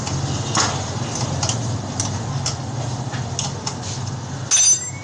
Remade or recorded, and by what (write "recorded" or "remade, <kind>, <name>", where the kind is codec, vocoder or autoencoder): recorded